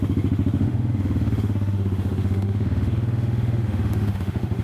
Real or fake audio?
fake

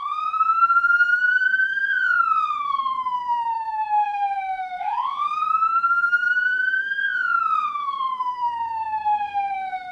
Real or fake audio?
fake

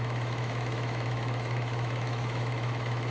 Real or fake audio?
fake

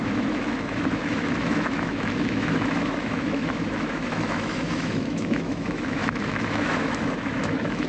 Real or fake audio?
fake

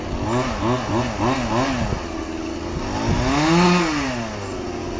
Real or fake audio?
real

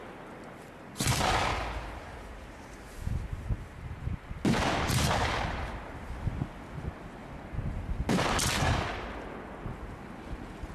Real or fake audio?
real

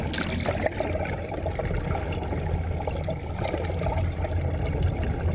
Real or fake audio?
real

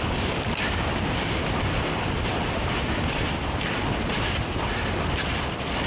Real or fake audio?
real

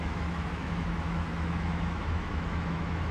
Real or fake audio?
fake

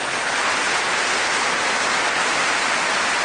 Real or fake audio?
real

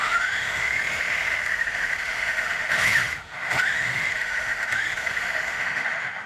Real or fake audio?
fake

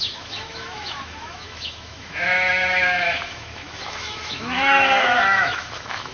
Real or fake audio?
fake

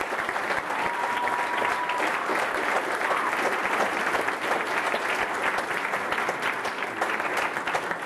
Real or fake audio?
real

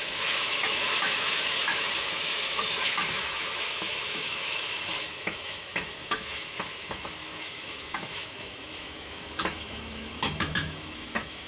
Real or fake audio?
fake